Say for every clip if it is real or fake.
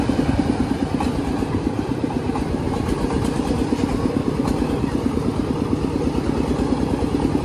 real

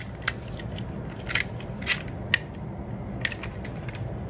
real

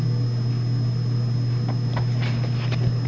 real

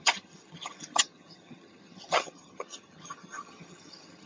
fake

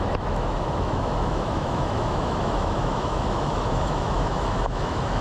fake